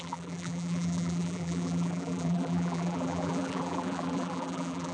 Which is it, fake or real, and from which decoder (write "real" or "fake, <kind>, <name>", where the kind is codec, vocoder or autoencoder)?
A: fake, vocoder, BigVGAN v2